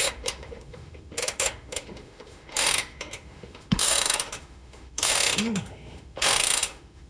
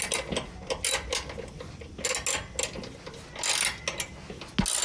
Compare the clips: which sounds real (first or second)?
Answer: second